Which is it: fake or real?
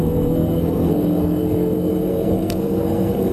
fake